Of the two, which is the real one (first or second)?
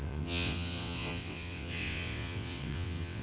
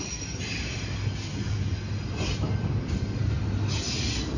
second